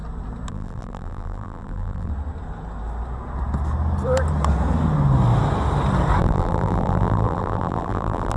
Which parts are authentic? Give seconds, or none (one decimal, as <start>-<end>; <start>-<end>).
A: 0.0-0.5; 2.1-6.2